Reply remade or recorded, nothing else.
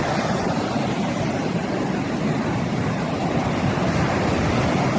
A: remade